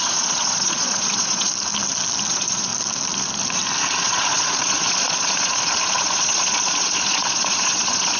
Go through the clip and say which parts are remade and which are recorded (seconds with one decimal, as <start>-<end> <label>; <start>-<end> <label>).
0.0-1.5 remade; 1.5-2.3 recorded; 2.3-2.7 remade; 2.7-4.0 recorded; 4.0-8.2 remade